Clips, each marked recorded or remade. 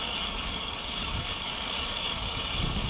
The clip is remade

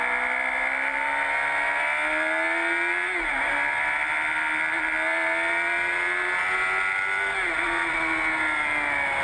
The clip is recorded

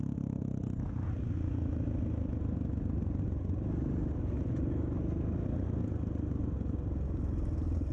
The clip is recorded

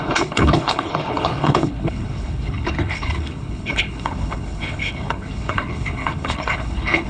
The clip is remade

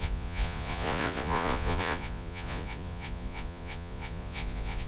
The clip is remade